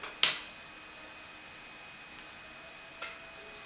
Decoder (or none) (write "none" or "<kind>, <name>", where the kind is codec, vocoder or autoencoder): none